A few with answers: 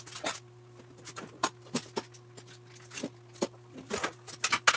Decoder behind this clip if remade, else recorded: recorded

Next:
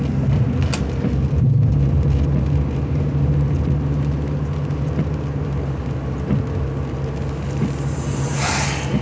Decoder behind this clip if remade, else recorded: recorded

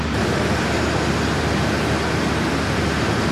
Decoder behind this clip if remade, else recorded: recorded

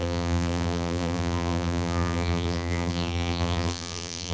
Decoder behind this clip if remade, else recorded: remade, vocoder, BigVGAN v2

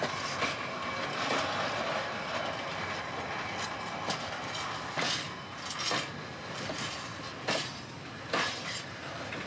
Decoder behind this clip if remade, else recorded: recorded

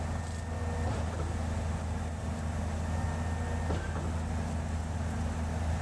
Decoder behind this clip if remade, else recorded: recorded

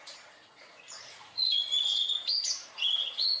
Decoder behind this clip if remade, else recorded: remade, vocoder, Vocos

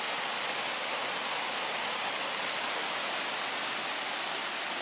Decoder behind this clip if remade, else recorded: recorded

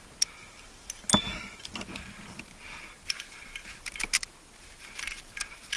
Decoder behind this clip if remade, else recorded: recorded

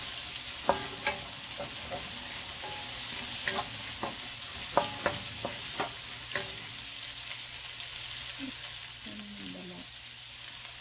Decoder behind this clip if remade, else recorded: recorded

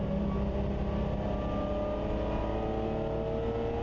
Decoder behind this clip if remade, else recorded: recorded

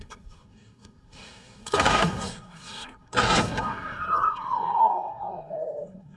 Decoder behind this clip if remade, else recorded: remade, codec, SNAC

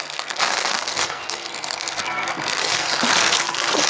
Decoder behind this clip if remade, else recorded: remade, codec, SNAC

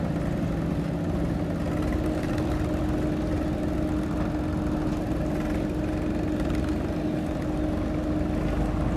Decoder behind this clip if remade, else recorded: recorded